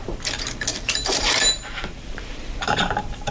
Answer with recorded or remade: remade